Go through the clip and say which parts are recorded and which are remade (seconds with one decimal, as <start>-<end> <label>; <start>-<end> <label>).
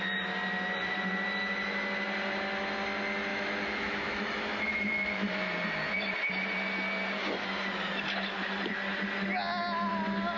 0.0-3.3 recorded; 3.3-5.3 remade; 5.3-10.4 recorded